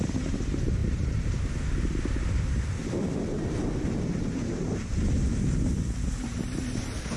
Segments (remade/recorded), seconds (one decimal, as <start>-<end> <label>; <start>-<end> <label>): 0.0-0.8 recorded; 0.8-1.4 remade; 1.4-7.2 recorded